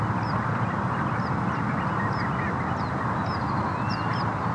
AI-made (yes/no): no